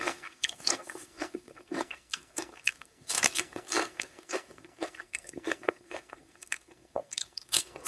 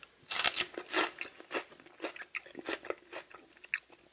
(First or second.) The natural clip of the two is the second